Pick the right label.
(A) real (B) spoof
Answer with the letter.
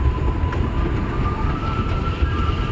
B